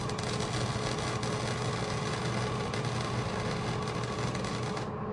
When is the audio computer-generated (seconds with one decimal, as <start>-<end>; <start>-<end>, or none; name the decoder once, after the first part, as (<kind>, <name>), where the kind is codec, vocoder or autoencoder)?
none